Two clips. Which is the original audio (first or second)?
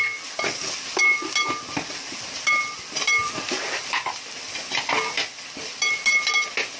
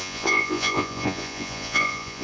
first